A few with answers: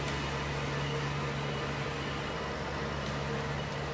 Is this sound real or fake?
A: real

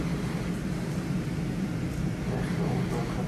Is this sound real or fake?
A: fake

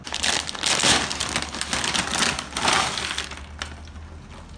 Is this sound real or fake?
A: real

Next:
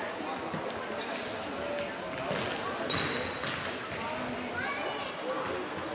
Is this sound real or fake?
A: real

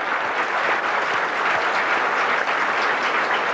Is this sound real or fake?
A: real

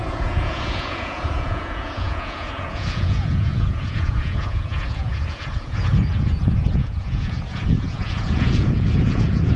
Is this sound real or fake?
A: fake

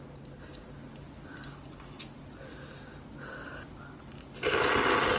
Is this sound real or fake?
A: real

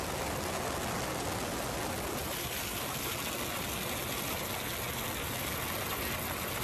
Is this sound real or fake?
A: real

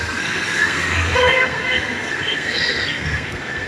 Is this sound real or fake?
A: fake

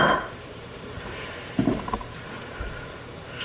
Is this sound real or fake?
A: fake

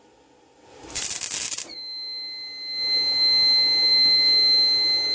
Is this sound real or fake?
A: real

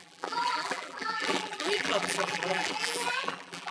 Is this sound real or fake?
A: fake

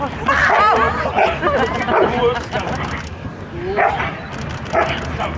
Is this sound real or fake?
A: real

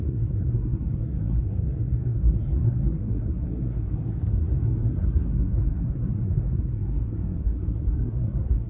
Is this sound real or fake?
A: fake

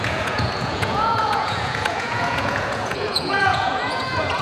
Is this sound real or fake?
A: fake